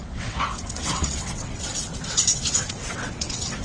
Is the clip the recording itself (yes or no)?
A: no